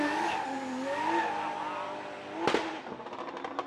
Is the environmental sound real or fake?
real